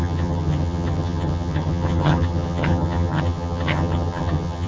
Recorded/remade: remade